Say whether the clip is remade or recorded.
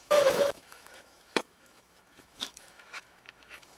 remade